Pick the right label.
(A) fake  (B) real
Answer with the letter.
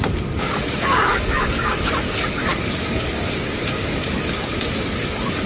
A